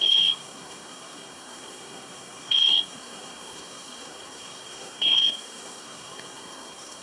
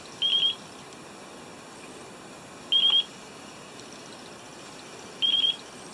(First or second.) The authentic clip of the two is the second